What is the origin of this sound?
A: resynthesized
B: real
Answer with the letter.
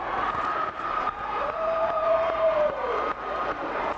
A